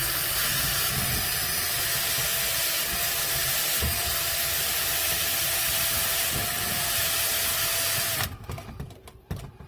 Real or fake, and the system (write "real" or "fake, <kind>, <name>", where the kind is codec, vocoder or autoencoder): real